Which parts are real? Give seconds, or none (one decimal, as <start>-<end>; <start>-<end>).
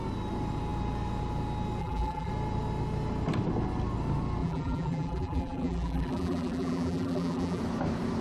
0.0-1.8; 2.3-4.4; 7.6-8.2